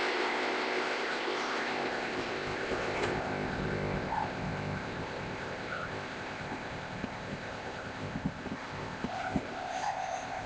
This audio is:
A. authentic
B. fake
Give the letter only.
B